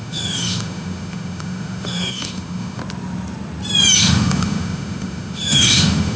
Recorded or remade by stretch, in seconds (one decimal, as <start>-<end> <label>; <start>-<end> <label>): 0.0-2.8 remade; 2.8-4.0 recorded; 4.0-6.2 remade